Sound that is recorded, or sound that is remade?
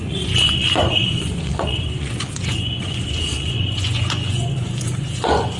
remade